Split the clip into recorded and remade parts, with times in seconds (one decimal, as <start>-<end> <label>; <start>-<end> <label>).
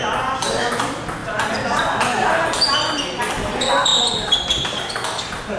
0.0-5.6 recorded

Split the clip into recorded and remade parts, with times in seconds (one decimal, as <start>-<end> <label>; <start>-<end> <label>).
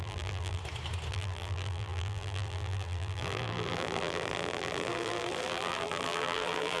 0.0-0.6 remade; 0.6-1.1 recorded; 1.1-6.8 remade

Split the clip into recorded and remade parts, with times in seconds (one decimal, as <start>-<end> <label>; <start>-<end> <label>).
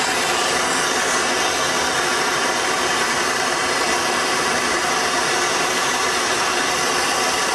0.0-2.1 recorded; 2.1-6.6 remade; 6.6-7.5 recorded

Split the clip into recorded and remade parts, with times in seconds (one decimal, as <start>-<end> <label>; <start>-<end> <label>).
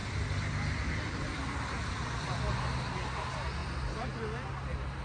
0.0-2.6 remade; 2.6-5.0 recorded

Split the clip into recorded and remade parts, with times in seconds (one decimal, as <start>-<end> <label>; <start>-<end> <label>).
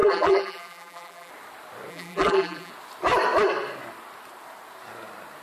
0.0-1.3 remade; 1.3-1.9 recorded; 1.9-2.7 remade; 2.7-5.4 recorded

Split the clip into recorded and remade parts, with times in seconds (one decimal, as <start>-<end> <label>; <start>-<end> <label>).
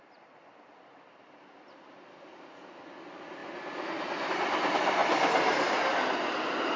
0.0-6.8 recorded